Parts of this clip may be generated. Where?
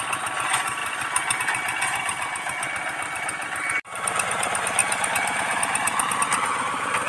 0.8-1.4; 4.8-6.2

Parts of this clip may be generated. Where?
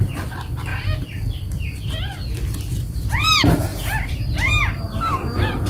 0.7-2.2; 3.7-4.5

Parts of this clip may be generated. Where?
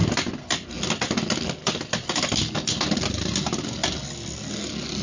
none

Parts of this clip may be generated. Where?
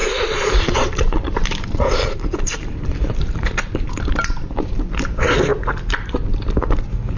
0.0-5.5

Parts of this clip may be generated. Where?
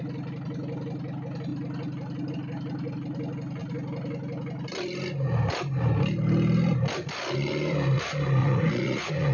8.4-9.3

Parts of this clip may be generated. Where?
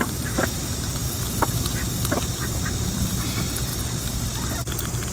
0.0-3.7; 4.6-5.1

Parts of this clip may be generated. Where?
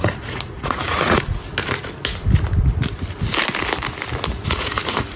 0.0-1.4; 4.5-5.2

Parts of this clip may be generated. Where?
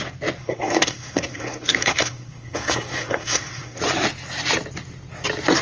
0.4-3.8